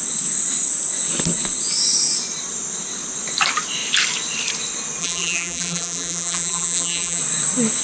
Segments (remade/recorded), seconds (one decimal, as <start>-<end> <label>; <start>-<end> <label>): 0.0-5.0 recorded; 5.0-7.2 remade; 7.2-7.8 recorded